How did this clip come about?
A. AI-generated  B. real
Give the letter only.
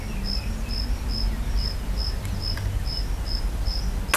B